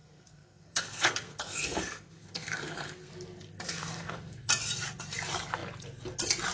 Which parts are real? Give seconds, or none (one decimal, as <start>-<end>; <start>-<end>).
3.1-3.5; 4.5-6.5